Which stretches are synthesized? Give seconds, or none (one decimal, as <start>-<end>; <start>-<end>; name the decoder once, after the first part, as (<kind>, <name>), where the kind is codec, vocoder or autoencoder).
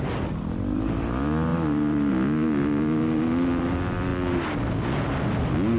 1.5-2.1 (vocoder, BigVGAN v2)